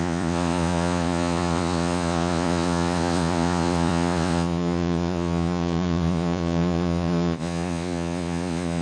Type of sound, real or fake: fake